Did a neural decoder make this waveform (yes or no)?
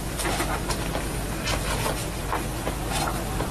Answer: no